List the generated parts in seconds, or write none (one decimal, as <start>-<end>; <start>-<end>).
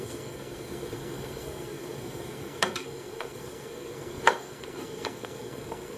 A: 0.0-6.0